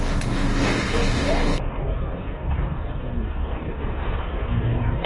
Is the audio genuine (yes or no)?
no